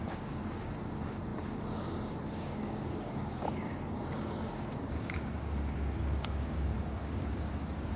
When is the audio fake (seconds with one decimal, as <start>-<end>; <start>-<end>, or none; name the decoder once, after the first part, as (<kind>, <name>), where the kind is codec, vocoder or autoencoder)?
0.0-8.0 (codec, DAC)

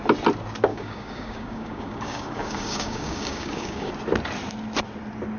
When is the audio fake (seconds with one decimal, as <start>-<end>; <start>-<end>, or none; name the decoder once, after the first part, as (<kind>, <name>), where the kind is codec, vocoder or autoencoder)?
0.7-3.9 (codec, DAC)

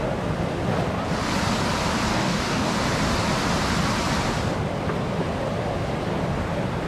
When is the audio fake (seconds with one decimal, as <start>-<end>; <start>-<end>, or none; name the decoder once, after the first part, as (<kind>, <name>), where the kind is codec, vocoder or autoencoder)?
2.1-2.7 (codec, DAC)